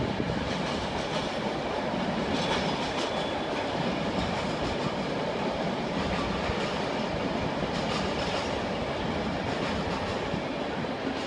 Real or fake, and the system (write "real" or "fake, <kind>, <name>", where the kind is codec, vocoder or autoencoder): real